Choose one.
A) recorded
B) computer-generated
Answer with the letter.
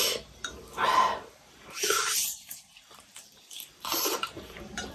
B